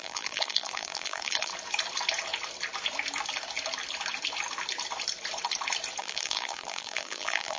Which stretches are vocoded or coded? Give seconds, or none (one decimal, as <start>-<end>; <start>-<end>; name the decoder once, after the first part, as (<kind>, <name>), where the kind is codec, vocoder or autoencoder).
0.0-1.5 (vocoder, BigVGAN v2); 6.0-7.6